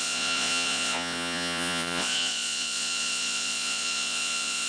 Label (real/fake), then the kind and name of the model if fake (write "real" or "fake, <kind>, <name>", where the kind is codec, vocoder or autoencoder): fake, vocoder, Vocos